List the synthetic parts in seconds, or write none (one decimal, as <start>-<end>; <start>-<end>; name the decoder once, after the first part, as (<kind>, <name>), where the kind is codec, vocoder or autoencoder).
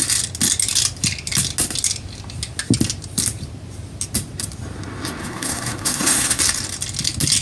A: 5.2-6.4 (codec, SNAC)